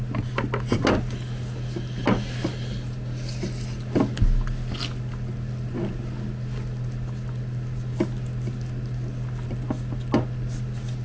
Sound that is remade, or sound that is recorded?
recorded